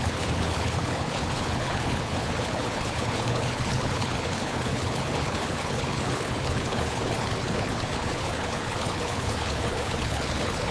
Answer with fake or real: fake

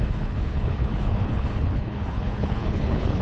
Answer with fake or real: fake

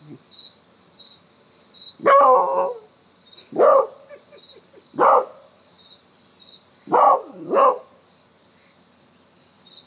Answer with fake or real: real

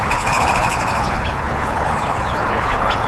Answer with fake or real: fake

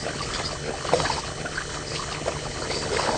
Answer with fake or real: fake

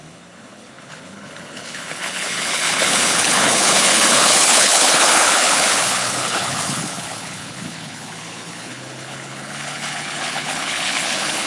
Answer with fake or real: fake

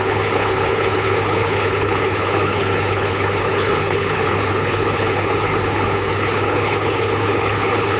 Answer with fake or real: fake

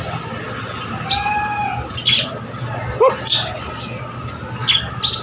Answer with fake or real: real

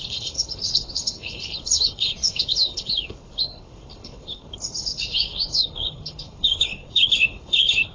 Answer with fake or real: fake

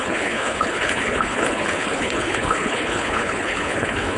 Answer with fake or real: fake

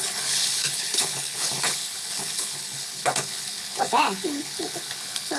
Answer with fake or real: fake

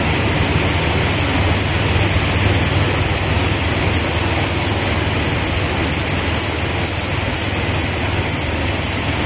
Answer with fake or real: real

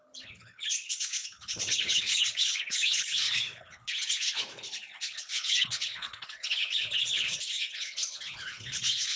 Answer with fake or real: fake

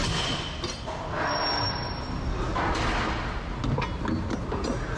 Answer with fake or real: real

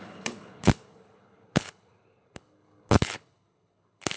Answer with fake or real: fake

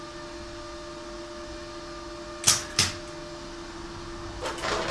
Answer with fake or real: real